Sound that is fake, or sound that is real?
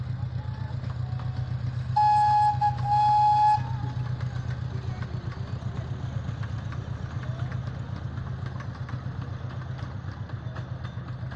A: real